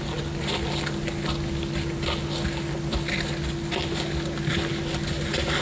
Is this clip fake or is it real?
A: real